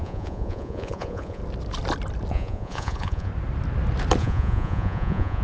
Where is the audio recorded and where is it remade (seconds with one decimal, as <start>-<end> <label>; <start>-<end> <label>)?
0.0-1.4 remade; 1.4-2.3 recorded; 2.3-3.3 remade; 3.3-4.2 recorded; 4.2-5.4 remade